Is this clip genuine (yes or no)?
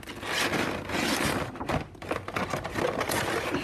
yes